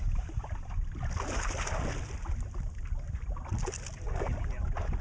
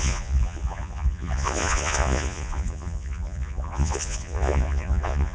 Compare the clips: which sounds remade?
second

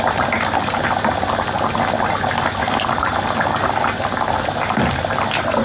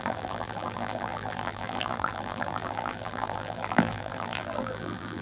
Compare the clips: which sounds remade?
second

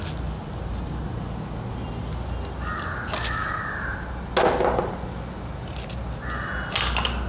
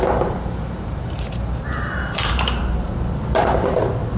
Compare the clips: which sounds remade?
second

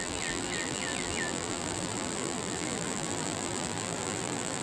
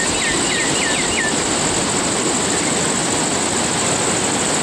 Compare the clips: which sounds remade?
first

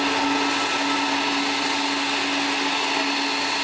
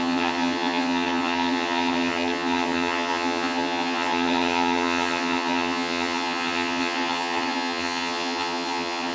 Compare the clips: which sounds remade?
second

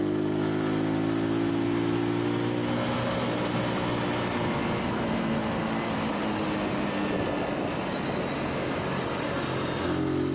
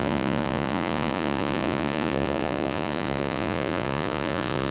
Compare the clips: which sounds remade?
second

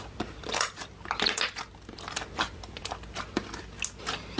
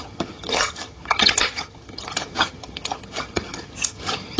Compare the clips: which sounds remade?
second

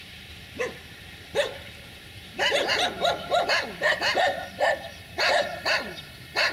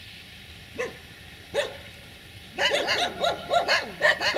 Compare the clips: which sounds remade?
first